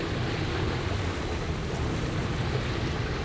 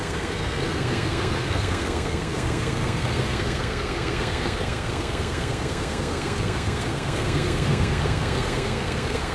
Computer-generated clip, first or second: second